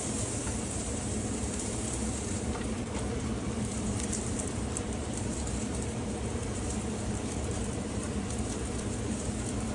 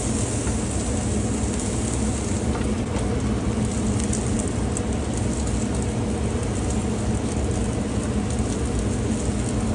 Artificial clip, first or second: first